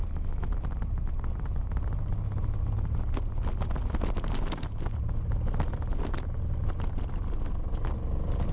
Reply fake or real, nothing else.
real